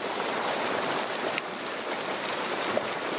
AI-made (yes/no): no